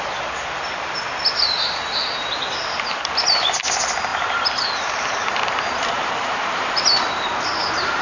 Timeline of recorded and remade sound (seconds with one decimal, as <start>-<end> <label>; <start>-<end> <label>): 0.0-4.1 recorded; 4.1-8.0 remade